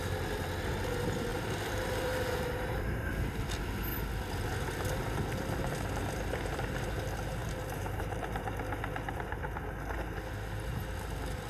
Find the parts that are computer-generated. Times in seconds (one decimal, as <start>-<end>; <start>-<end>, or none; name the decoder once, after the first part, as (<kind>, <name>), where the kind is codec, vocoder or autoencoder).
1.3-2.8 (vocoder, BigVGAN v2); 7.4-8.4